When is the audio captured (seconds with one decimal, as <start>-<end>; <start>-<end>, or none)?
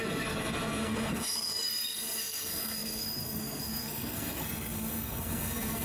none